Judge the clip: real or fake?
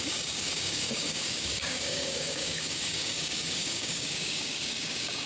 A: fake